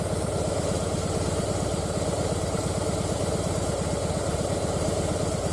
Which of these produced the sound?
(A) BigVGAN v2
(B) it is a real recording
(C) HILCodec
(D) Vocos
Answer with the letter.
B